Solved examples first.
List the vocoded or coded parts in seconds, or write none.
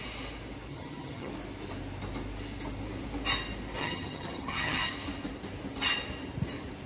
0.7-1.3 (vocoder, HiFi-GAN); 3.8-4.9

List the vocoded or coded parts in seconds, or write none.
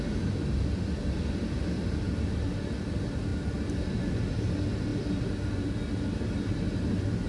none